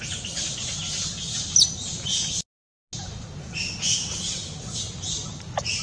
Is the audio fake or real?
real